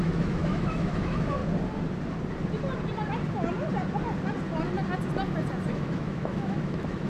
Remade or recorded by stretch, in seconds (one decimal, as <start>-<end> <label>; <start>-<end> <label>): 0.0-1.4 remade; 1.4-5.7 recorded; 5.7-7.1 remade